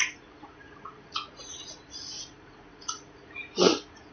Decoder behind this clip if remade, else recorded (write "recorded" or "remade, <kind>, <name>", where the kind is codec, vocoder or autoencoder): remade, vocoder, Vocos